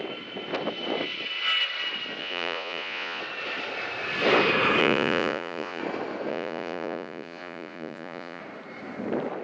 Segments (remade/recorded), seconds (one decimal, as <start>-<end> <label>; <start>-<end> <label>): 0.0-2.2 recorded; 2.2-3.2 remade; 3.2-4.8 recorded; 4.8-5.8 remade; 5.8-6.3 recorded; 6.3-8.4 remade; 8.4-9.4 recorded